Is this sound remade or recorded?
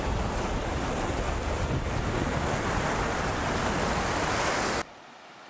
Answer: recorded